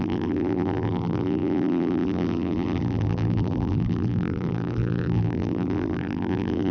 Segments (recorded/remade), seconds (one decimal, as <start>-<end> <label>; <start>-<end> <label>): 0.0-6.7 remade

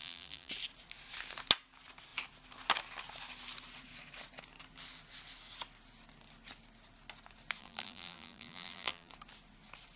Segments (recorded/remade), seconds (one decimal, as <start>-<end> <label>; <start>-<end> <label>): 0.0-0.5 remade; 0.5-7.6 recorded; 7.6-9.1 remade; 9.1-10.0 recorded

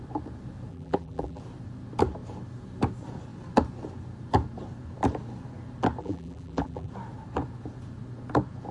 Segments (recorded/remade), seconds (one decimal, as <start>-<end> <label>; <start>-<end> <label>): 0.0-0.7 recorded; 0.7-1.4 remade; 1.4-6.0 recorded; 6.0-6.9 remade; 6.9-8.7 recorded

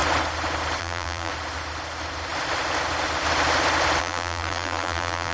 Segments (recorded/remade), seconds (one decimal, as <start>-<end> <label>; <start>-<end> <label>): 0.0-0.8 recorded; 0.8-1.3 remade; 1.3-4.0 recorded; 4.0-5.3 remade